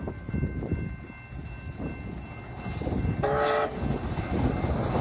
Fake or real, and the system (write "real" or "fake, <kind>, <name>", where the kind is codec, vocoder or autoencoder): real